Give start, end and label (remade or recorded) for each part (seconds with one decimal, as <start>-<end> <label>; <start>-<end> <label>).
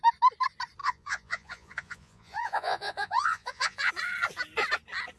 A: 0.0-0.8 recorded; 0.8-3.9 remade; 3.9-5.2 recorded